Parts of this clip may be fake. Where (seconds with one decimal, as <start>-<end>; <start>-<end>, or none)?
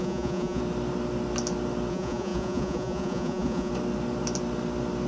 0.0-0.6; 1.9-3.7